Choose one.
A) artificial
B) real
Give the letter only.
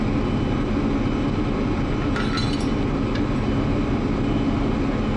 B